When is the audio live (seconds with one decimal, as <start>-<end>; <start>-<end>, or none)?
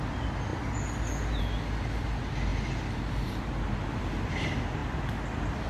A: 0.0-5.7